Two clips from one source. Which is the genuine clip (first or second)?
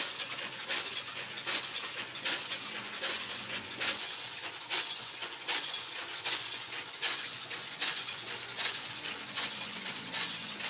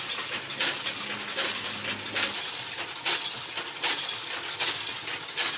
second